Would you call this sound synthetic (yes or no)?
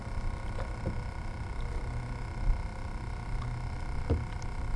no